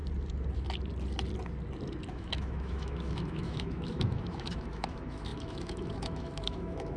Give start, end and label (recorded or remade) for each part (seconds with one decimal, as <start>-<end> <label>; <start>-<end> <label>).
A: 0.0-2.1 recorded; 2.1-7.0 remade